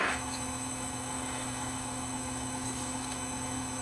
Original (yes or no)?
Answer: no